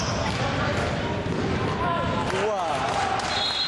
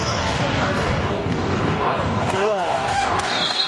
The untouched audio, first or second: first